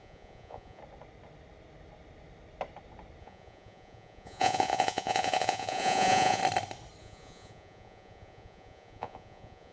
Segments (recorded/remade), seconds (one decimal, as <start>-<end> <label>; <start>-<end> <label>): 0.0-0.8 remade; 0.8-3.2 recorded; 3.2-6.4 remade; 6.4-7.0 recorded; 7.0-9.7 remade